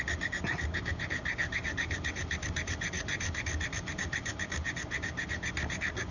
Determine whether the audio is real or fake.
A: real